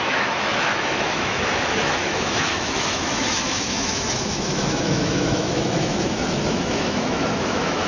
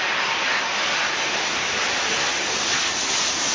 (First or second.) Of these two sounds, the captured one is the second